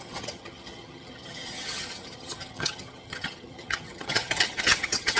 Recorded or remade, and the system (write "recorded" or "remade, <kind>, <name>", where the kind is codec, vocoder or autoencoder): remade, vocoder, HiFi-GAN